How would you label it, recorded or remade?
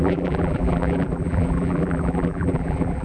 remade